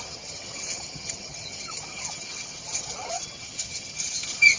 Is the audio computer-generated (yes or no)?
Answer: yes